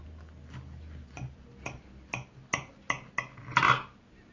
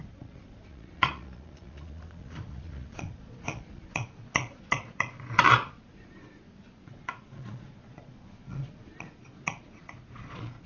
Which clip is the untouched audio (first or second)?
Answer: first